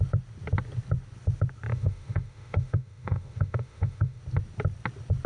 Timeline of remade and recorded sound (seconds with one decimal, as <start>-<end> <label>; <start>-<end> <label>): 0.0-1.7 recorded; 1.7-4.2 remade; 4.2-5.3 recorded